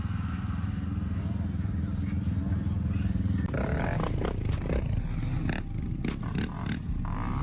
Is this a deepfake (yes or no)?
no